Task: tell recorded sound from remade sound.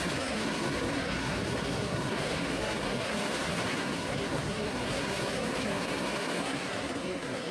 remade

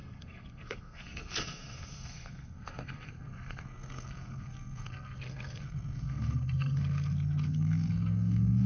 remade